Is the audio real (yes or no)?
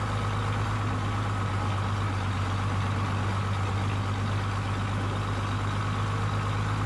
yes